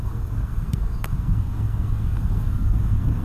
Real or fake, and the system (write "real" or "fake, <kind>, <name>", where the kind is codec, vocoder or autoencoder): fake, codec, SNAC